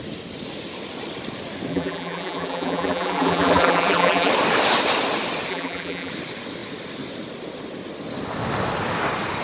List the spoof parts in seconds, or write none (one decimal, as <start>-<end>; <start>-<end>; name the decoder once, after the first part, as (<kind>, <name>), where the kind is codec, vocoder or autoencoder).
1.7-4.3 (vocoder, BigVGAN v2); 5.5-6.1